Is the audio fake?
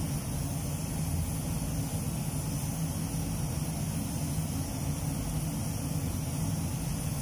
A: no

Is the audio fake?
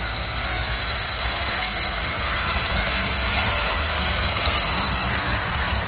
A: yes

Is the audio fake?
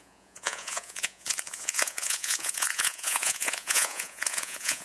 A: yes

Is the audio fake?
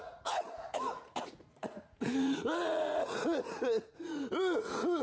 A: yes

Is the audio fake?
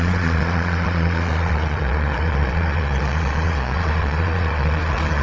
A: yes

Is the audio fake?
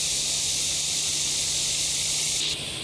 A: no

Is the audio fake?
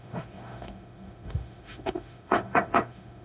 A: yes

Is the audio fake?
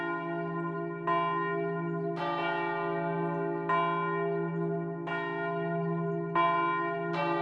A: no